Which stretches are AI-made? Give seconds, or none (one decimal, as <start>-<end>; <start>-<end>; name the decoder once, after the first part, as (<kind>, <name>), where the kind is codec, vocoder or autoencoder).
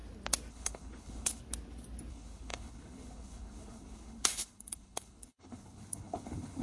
0.5-1.4 (codec, HILCodec); 2.1-6.6